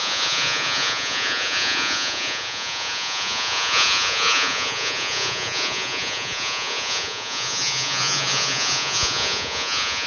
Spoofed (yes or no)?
yes